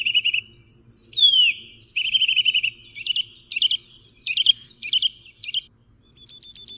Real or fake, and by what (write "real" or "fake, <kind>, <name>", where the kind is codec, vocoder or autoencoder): real